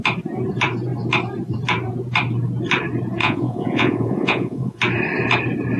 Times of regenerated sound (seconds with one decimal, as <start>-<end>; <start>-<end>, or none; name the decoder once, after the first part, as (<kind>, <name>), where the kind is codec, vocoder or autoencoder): 3.2-4.8 (vocoder, Vocos)